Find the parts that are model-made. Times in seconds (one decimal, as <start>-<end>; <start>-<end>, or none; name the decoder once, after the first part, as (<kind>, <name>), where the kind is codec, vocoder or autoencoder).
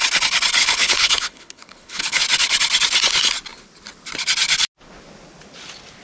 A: 0.6-2.2 (codec, HILCodec)